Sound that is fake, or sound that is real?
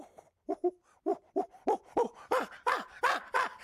real